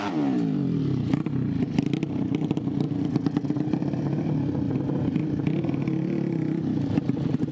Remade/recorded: recorded